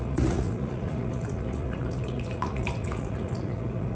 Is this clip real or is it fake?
fake